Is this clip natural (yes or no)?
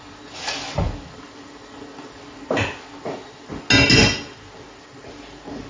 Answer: yes